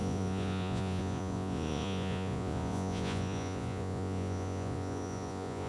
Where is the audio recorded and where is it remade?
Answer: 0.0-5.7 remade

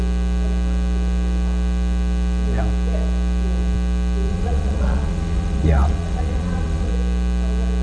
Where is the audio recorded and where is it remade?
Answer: 0.0-4.3 recorded; 4.3-6.9 remade; 6.9-7.8 recorded

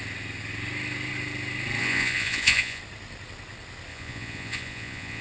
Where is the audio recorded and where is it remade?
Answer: 0.0-1.8 recorded; 1.8-2.8 remade; 2.8-3.9 recorded; 3.9-5.2 remade